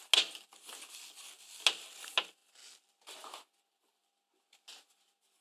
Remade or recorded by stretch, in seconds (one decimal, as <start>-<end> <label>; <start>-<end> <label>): 0.0-5.4 recorded